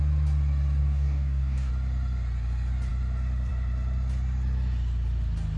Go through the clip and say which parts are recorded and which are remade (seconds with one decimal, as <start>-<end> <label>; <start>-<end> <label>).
0.0-0.8 recorded; 0.8-1.7 remade; 1.7-5.6 recorded